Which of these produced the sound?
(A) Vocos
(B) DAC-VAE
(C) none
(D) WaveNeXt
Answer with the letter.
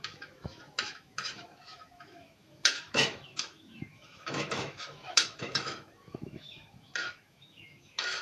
B